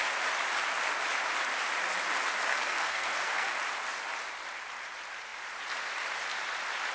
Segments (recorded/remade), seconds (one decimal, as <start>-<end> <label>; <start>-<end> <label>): 0.0-2.5 recorded; 2.5-3.5 remade; 3.5-6.9 recorded